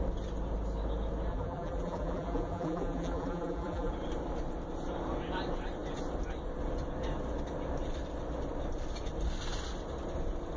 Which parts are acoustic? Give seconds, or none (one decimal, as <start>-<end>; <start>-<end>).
0.0-1.3; 3.9-10.6